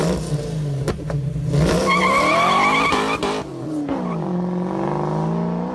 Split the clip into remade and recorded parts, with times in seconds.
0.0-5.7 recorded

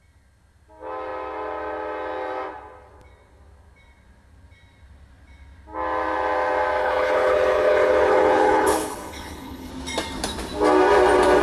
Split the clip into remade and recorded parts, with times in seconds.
0.0-6.8 recorded; 6.8-9.7 remade; 9.7-11.4 recorded

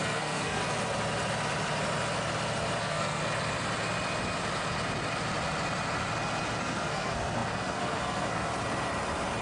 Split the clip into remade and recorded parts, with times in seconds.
0.0-0.6 remade; 0.6-2.8 recorded; 2.8-3.2 remade; 3.2-6.6 recorded; 6.6-8.5 remade; 8.5-9.4 recorded

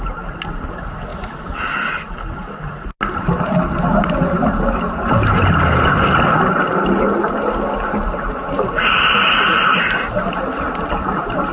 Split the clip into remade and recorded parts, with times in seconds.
0.0-11.5 recorded

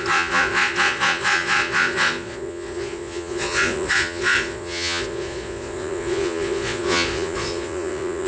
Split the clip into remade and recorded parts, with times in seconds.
0.0-8.3 remade

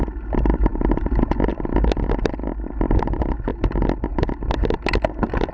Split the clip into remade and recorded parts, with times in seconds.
0.0-5.5 recorded

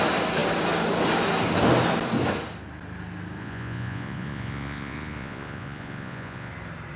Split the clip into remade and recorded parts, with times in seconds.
0.0-3.4 recorded; 3.4-6.5 remade; 6.5-7.0 recorded